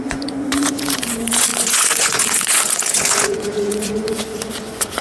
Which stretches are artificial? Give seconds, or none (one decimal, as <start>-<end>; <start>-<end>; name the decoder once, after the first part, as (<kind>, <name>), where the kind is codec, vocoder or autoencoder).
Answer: 0.0-5.0 (vocoder, Vocos)